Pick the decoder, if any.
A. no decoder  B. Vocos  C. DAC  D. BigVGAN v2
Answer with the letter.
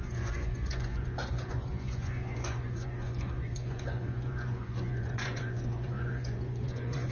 B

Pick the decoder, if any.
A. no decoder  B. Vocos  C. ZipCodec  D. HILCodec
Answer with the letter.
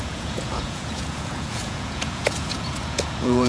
B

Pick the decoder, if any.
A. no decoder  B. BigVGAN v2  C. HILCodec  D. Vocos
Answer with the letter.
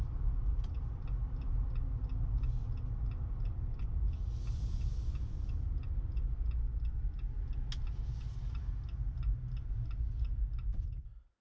A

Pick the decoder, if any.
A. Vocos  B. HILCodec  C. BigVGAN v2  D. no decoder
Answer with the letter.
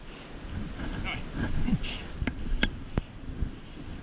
D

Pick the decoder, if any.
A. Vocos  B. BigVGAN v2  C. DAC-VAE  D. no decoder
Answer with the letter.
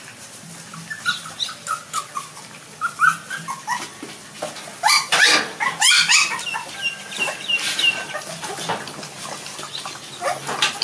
D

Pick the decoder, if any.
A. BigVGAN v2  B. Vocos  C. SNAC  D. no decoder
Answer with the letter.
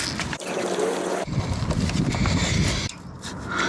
D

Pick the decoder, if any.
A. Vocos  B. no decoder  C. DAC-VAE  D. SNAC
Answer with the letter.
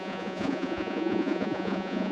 A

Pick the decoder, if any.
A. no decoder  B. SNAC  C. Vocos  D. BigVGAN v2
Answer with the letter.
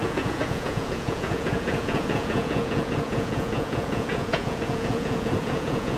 C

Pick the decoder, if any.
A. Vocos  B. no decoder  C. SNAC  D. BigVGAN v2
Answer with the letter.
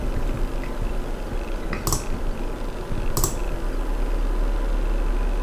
B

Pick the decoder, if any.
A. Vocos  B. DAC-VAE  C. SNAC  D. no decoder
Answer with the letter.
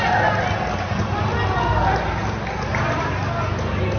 D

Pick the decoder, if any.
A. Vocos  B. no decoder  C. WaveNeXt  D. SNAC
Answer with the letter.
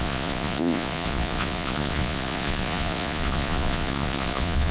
A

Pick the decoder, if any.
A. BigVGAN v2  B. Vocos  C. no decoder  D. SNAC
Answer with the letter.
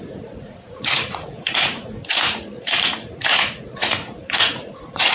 B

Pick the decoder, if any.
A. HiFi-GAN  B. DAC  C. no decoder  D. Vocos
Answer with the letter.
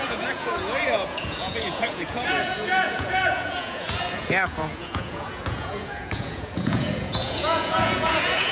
D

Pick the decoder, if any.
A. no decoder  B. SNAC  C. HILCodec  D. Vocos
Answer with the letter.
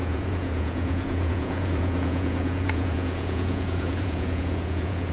D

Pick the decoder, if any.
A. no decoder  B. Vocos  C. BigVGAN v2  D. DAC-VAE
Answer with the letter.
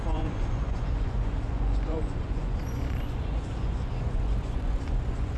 B